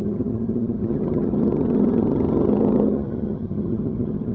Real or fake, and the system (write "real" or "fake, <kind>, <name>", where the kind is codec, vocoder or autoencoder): fake, vocoder, HiFi-GAN